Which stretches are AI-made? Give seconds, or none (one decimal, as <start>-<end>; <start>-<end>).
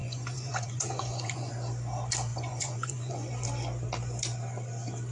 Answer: 0.0-1.5; 2.3-3.3